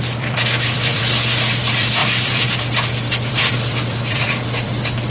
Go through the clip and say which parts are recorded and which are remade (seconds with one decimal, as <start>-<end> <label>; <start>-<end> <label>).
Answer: 0.0-5.1 remade